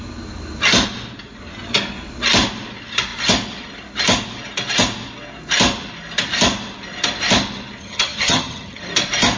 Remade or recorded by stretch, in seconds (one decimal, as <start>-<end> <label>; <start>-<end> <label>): 0.0-7.8 recorded; 7.8-8.8 remade; 8.8-9.4 recorded